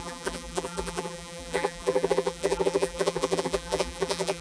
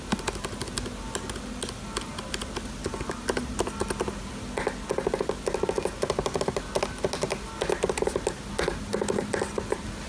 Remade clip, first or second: first